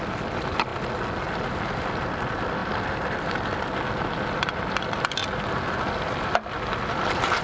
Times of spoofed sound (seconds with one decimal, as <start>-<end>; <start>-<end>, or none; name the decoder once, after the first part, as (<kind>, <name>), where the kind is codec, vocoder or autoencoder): none